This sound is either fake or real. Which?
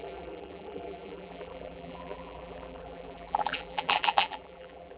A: fake